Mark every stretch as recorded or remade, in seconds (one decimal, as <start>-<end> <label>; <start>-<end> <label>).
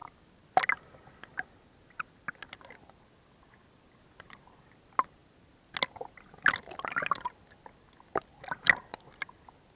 0.0-9.7 recorded